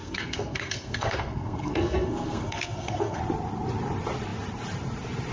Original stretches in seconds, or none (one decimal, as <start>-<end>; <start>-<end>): 3.2-5.3